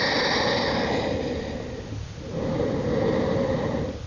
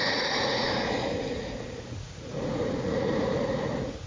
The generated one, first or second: second